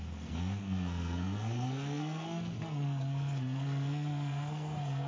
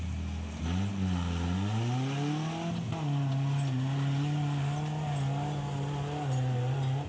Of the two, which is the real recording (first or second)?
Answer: second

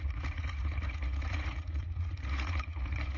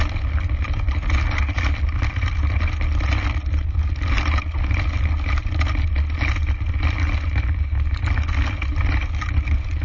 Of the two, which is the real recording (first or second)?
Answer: second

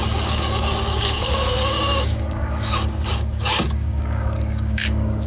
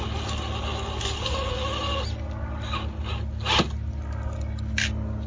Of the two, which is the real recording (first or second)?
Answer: second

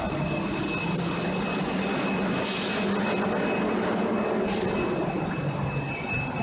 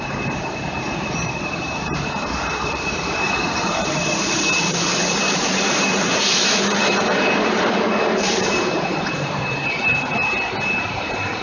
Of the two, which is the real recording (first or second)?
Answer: first